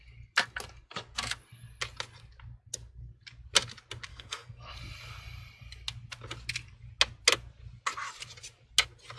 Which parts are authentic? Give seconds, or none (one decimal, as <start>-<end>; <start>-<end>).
0.0-4.1; 4.7-9.2